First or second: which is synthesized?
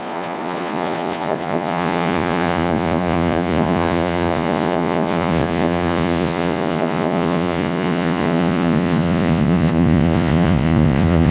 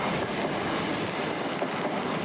first